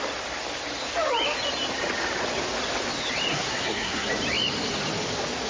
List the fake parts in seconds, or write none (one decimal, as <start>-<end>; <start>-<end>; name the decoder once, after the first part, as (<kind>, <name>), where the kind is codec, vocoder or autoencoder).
3.3-4.1 (codec, SNAC)